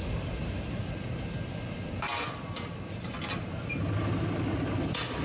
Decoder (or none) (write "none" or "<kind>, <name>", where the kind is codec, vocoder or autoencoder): none